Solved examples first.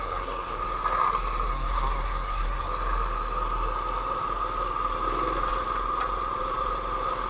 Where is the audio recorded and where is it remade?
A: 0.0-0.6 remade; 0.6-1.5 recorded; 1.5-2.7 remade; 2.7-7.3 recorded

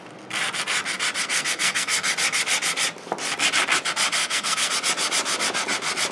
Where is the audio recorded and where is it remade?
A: 0.0-1.2 recorded; 1.2-2.1 remade; 2.1-4.2 recorded; 4.2-4.7 remade; 4.7-6.1 recorded